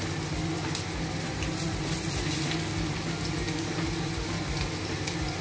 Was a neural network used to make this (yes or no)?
no